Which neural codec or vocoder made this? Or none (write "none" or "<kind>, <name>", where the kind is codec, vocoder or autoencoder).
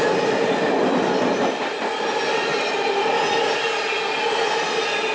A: none